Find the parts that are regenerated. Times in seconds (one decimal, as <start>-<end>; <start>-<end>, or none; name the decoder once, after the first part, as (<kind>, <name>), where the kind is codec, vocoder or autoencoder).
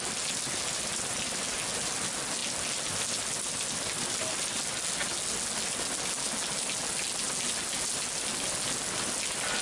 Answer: none